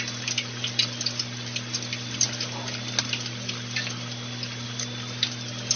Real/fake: real